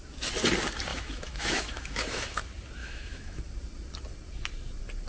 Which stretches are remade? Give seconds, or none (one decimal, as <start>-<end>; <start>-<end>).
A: 0.9-2.4; 2.8-3.4